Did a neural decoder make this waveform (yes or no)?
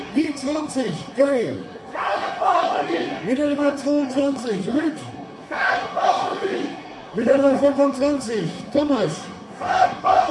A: yes